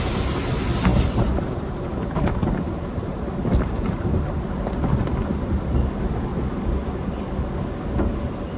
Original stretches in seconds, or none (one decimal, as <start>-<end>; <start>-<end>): 6.3-8.2